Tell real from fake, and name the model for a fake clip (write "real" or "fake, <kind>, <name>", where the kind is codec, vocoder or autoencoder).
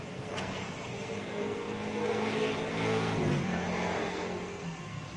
fake, codec, SNAC